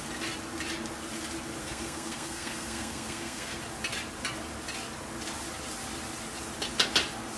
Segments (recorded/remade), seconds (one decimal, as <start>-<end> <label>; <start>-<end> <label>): 0.0-1.6 recorded; 1.6-3.6 remade; 3.6-7.4 recorded